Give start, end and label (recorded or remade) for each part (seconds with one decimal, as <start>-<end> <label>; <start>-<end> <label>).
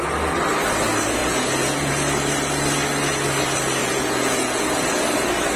0.0-1.2 recorded; 1.2-1.9 remade; 1.9-3.8 recorded; 3.8-4.9 remade; 4.9-5.6 recorded